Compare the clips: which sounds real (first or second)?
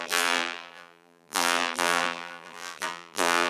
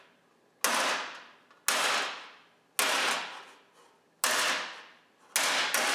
second